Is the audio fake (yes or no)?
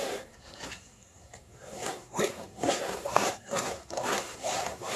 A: yes